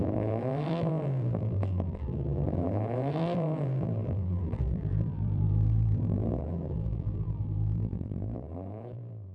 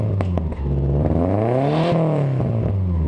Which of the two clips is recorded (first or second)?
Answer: second